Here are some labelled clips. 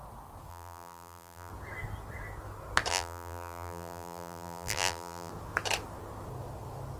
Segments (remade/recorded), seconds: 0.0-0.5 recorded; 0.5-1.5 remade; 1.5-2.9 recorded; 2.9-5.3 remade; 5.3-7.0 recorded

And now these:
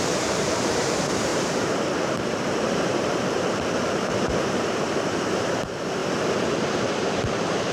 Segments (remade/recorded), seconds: 0.0-6.0 remade; 6.0-6.7 recorded; 6.7-7.7 remade

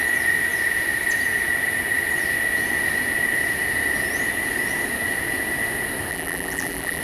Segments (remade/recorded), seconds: 0.0-6.1 recorded; 6.1-7.0 remade

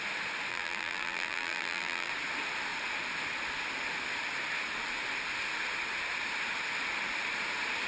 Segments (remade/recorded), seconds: 0.0-0.5 recorded; 0.5-2.1 remade; 2.1-7.9 recorded

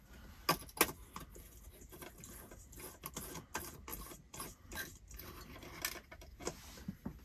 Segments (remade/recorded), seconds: 0.0-7.2 recorded

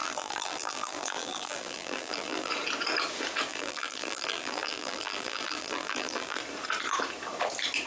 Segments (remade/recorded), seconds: 0.0-2.5 remade; 2.5-3.5 recorded; 3.5-6.4 remade; 6.4-7.9 recorded